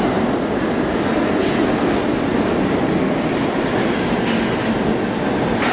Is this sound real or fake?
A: real